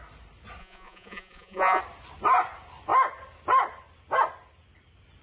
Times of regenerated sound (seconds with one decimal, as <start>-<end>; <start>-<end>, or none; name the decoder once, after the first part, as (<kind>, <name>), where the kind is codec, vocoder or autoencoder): 0.6-1.8 (vocoder, Vocos)

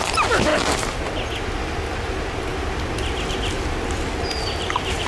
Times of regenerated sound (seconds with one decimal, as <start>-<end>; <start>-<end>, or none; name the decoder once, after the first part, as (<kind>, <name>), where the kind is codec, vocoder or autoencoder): none

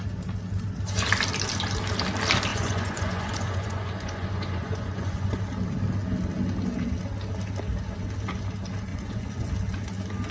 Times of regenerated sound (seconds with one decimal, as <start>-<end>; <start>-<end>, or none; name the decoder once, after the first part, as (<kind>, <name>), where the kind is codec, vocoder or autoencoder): 2.5-5.4 (vocoder, Vocos); 8.9-9.5

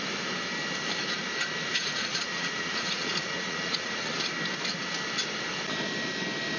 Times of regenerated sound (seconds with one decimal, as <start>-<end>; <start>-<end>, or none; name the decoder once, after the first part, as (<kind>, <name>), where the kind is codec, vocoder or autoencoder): 1.7-4.3 (vocoder, Vocos)

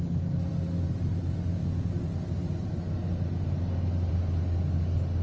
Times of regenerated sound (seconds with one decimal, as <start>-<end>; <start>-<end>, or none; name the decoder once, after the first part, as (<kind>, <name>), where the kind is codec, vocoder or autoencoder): none

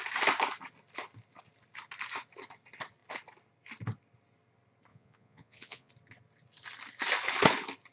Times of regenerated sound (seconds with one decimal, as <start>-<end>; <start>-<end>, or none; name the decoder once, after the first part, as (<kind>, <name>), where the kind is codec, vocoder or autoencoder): 4.9-5.9 (vocoder, Vocos)

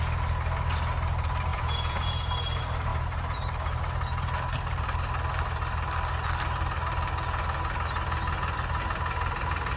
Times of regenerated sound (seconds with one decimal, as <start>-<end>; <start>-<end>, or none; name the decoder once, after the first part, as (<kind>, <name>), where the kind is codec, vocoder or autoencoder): 1.5-2.3 (vocoder, Vocos)

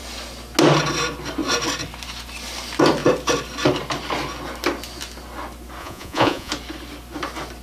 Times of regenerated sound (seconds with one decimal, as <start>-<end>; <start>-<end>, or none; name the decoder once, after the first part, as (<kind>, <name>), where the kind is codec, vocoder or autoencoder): 5.8-6.5 (vocoder, Vocos)